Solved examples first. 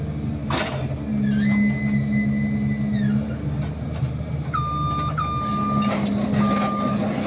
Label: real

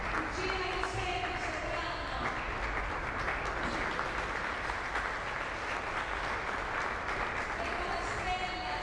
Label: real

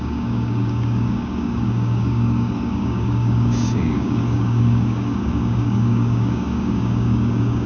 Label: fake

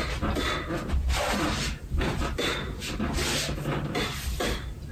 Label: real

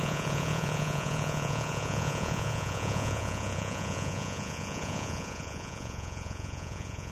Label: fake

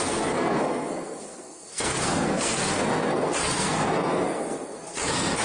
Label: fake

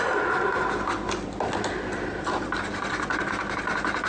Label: real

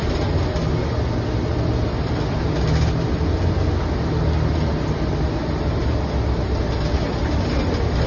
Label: real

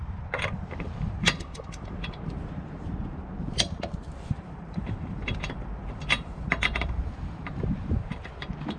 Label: fake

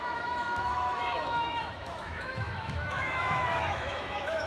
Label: fake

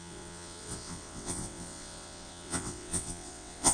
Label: fake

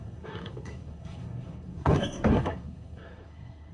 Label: fake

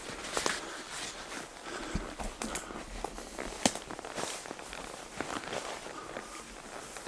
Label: real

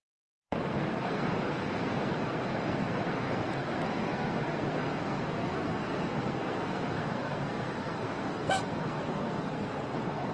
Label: fake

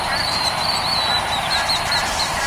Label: fake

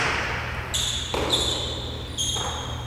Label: real